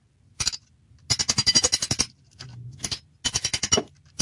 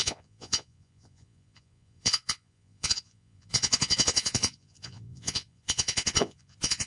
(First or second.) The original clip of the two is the first